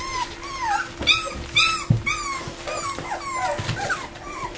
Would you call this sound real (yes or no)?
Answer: yes